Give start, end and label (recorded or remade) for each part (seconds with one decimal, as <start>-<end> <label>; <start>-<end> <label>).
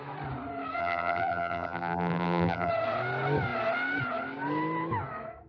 0.0-0.8 recorded; 0.8-2.7 remade; 2.7-5.5 recorded